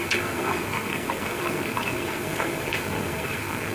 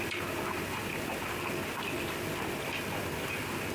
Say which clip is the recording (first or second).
second